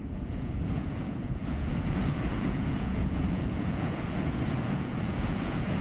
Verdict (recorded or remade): remade